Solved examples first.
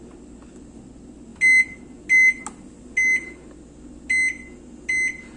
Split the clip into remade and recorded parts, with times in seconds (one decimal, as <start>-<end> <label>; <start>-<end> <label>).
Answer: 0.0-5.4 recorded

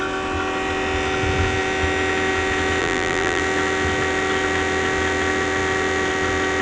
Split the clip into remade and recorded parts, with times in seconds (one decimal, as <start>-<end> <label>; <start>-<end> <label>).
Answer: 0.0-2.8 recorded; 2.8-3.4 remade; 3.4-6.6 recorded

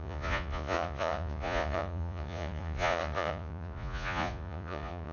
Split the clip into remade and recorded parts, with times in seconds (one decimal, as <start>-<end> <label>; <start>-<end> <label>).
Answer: 0.0-5.1 remade

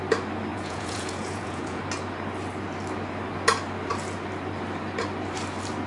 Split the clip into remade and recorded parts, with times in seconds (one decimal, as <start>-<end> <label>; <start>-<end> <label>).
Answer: 0.0-0.5 recorded; 0.5-1.8 remade; 1.8-5.9 recorded

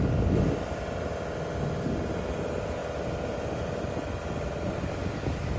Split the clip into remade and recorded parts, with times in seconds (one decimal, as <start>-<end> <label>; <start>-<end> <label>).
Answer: 0.0-5.6 recorded

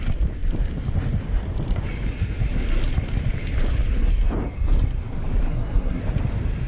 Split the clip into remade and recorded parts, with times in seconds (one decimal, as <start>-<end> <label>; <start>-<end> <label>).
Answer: 0.0-5.5 recorded; 5.5-6.0 remade; 6.0-6.7 recorded